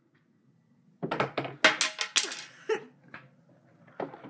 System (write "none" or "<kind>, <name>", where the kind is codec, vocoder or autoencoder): none